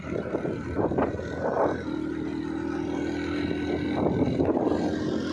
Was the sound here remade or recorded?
recorded